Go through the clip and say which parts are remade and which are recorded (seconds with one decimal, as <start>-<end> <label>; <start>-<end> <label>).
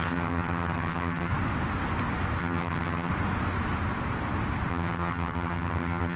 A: 0.0-1.3 remade; 1.3-2.4 recorded; 2.4-3.1 remade; 3.1-4.7 recorded; 4.7-6.2 remade